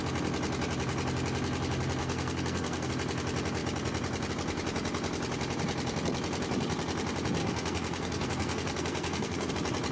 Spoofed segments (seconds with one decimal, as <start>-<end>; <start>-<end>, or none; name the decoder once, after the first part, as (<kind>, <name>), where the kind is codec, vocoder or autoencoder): 2.0-2.9 (codec, SNAC); 7.4-9.5

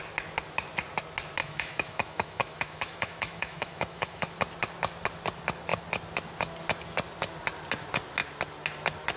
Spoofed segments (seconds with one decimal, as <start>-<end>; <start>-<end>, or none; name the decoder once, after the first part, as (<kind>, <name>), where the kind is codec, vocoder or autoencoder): 1.4-4.3 (autoencoder, DAC-VAE)